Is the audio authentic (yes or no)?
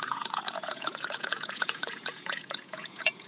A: no